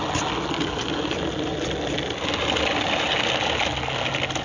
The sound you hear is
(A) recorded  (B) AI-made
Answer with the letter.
A